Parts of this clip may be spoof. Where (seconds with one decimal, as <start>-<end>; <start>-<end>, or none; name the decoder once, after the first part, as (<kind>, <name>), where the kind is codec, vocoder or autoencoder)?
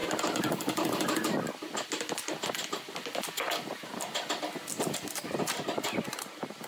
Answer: none